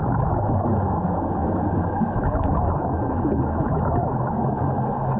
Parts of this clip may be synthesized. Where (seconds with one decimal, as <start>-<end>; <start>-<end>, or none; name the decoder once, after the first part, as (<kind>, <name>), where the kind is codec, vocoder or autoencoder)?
0.0-5.2 (autoencoder, DAC-VAE)